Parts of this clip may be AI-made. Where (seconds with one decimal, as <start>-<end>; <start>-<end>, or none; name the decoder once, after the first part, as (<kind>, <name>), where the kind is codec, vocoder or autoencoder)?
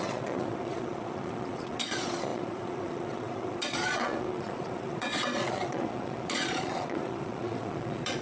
0.0-8.2 (vocoder, Vocos)